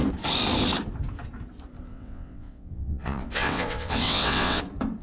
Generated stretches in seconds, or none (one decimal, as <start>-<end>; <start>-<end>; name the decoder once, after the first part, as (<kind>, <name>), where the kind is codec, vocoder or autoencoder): 1.9-4.6 (vocoder, WaveNeXt)